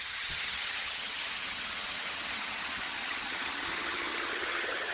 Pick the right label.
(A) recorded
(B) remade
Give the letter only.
B